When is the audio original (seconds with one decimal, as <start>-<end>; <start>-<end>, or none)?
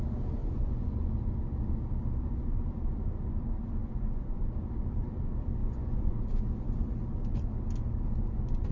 0.0-0.4; 1.1-3.8; 4.5-5.6; 6.2-8.7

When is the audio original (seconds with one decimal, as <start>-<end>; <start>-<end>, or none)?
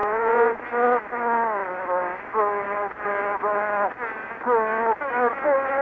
0.6-5.8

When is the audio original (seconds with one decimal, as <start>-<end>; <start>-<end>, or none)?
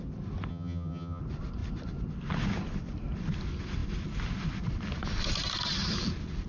0.0-0.5; 1.2-6.5